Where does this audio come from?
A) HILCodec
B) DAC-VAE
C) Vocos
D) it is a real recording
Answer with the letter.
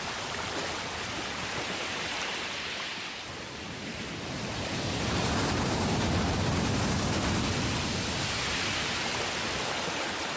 D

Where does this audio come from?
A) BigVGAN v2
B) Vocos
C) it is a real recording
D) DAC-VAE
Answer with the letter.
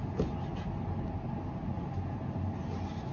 C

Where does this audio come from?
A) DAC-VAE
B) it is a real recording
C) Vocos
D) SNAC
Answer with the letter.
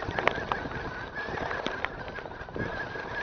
B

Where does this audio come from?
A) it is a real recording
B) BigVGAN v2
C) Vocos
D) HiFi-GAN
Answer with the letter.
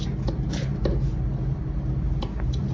A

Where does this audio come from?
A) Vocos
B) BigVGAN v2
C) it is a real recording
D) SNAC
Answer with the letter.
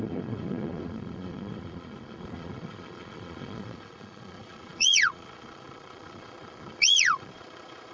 A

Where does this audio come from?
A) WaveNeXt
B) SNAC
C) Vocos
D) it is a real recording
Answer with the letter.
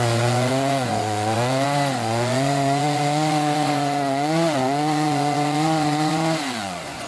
C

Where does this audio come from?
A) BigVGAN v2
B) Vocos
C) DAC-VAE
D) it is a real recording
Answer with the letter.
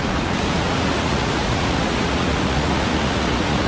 B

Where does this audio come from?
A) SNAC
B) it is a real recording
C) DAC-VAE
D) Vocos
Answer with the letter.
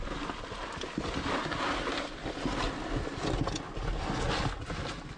B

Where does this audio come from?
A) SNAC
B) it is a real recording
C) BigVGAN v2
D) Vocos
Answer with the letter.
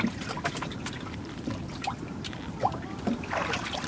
B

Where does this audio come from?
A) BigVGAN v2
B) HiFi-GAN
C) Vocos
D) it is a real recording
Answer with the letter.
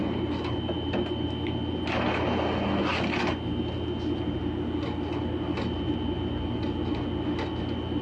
D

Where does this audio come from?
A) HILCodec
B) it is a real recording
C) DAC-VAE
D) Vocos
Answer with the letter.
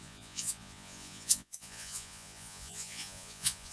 D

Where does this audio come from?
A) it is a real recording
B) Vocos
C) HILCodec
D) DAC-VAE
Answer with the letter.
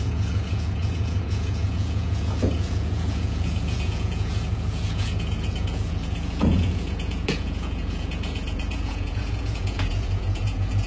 B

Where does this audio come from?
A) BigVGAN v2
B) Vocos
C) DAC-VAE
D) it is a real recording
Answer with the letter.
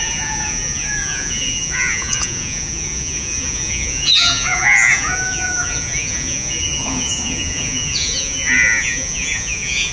B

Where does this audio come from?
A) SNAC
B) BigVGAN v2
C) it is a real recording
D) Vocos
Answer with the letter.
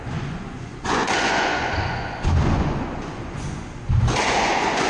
D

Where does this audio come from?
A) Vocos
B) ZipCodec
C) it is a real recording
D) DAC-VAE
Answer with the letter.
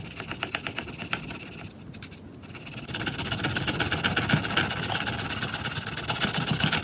C